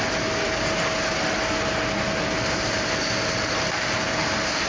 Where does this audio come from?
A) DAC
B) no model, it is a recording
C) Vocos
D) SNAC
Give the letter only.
B